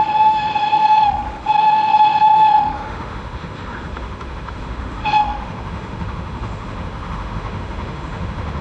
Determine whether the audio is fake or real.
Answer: fake